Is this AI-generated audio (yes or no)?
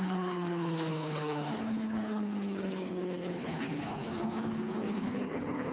yes